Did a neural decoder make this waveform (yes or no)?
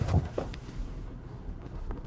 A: yes